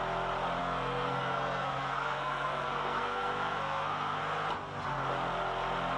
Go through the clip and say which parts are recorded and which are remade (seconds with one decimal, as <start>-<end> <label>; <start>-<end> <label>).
0.0-0.6 recorded; 0.6-4.2 remade; 4.2-6.0 recorded